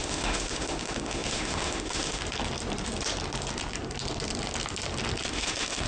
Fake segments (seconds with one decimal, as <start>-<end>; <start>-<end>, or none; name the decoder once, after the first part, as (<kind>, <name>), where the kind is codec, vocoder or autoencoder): 0.0-2.2 (autoencoder, DAC-VAE); 5.3-5.9